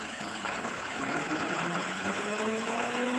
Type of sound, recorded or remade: remade